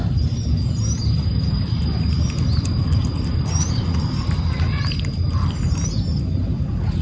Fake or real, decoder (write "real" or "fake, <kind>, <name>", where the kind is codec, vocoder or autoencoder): real